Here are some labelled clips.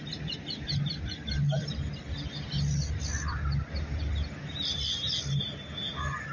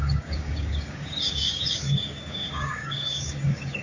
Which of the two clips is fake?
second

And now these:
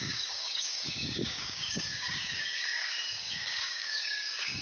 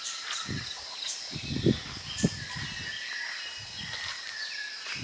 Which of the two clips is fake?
first